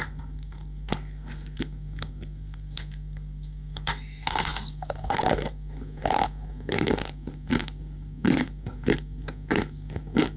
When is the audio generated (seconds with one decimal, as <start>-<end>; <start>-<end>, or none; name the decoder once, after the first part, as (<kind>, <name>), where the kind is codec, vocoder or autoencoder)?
0.0-10.4 (codec, SNAC)